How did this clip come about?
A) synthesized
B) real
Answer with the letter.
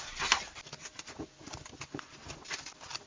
A